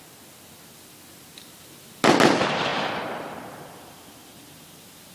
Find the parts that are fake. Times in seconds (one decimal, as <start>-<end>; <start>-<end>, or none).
none